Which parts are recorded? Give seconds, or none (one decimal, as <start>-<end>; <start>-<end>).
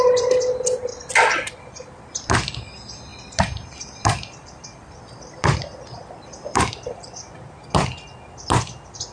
0.0-0.9; 1.5-3.1; 7.7-9.1